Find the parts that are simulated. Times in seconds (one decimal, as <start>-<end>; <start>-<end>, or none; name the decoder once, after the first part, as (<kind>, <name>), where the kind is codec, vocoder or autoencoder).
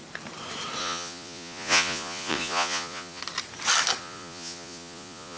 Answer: 0.8-3.2 (vocoder, Vocos); 4.0-5.4